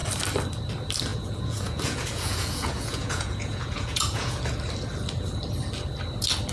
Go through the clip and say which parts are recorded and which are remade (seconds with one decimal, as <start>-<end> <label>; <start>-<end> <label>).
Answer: 0.0-1.1 recorded; 1.1-4.4 remade; 4.4-6.5 recorded